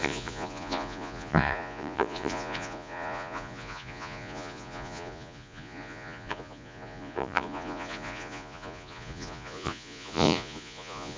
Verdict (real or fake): fake